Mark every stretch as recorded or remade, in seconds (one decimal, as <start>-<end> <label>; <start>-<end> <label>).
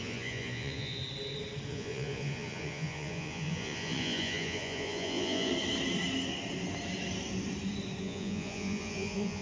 0.0-1.0 remade; 1.0-1.7 recorded; 1.7-5.5 remade; 5.5-8.0 recorded; 8.0-9.4 remade